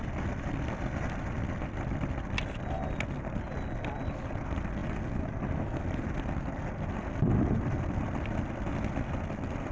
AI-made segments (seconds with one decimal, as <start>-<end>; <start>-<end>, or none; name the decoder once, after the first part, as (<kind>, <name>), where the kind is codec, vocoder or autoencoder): none